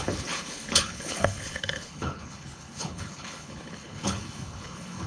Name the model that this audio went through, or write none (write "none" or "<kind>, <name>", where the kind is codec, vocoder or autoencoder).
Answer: codec, HILCodec